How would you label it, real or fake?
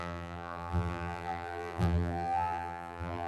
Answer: fake